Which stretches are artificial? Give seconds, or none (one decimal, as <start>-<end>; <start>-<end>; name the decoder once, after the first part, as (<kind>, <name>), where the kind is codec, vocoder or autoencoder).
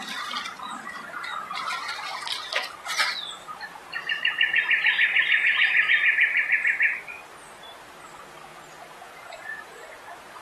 8.5-9.6 (vocoder, Vocos)